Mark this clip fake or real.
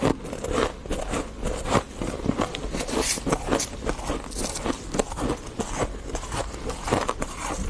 real